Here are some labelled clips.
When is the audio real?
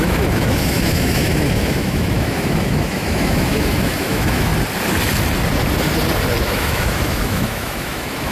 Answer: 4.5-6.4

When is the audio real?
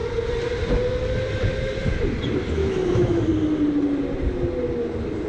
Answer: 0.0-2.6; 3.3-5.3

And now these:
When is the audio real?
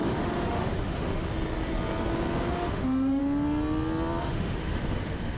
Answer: 1.3-2.5; 3.2-4.2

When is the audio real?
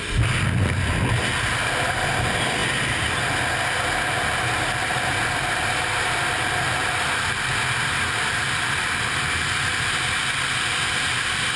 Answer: 0.0-11.6